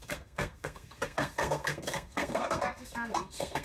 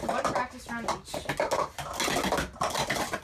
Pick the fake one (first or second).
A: first